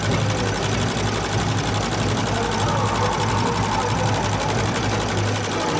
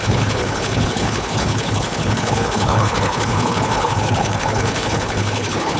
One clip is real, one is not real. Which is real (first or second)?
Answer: first